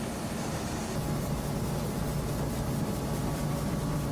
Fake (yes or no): no